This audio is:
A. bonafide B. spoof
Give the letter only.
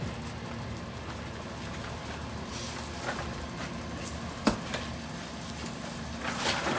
A